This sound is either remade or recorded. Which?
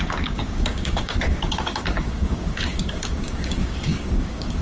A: remade